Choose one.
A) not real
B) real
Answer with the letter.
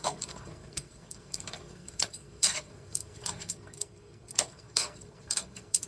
A